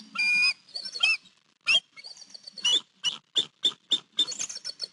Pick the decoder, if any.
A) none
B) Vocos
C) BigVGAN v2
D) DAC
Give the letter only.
A